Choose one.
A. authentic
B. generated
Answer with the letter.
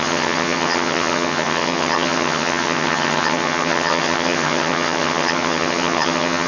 B